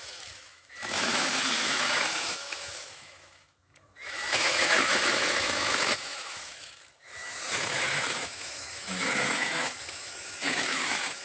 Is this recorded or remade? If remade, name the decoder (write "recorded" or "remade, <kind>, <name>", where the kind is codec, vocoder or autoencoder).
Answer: remade, autoencoder, DAC-VAE